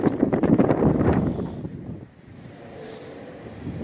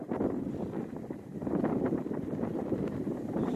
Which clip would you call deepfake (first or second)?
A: first